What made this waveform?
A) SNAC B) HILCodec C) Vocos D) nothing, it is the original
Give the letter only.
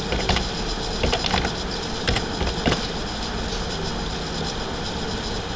D